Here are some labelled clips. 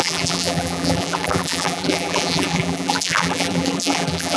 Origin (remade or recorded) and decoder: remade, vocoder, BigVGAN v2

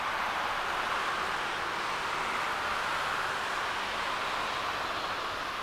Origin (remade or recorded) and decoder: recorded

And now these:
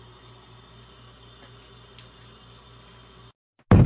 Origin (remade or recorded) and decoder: recorded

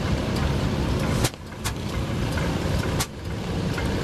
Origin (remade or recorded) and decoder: remade, vocoder, BigVGAN v2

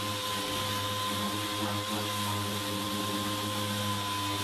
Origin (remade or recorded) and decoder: recorded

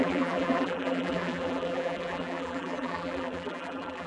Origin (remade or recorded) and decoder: remade, vocoder, BigVGAN v2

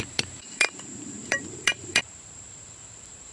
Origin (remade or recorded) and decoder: remade, vocoder, BigVGAN v2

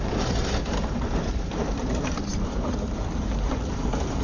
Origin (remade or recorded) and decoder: remade, vocoder, BigVGAN v2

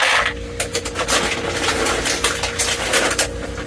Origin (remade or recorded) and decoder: recorded